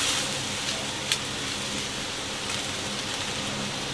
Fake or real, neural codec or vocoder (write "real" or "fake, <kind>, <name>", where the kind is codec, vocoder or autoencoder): real